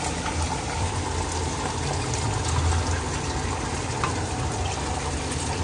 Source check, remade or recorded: recorded